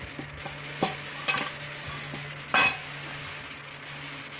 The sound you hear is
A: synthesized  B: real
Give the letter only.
B